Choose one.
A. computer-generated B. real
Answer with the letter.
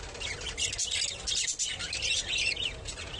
B